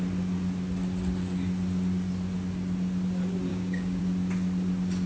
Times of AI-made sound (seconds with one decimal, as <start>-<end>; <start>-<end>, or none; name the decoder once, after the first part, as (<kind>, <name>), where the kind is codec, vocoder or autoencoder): 3.5-4.0 (codec, DAC)